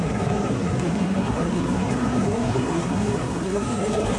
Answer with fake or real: fake